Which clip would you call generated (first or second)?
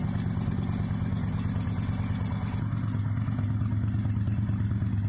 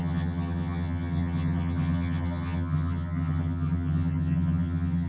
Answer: second